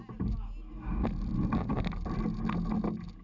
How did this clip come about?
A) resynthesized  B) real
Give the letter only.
B